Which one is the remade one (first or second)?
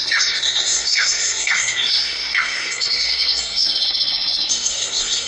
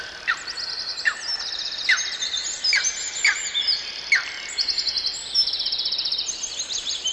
first